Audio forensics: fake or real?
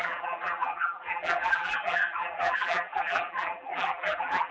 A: fake